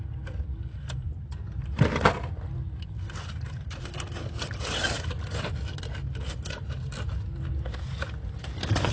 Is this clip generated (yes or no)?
no